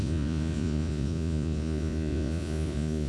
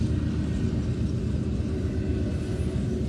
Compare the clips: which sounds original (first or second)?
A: second